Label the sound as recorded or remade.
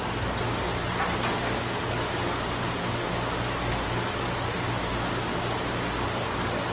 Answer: recorded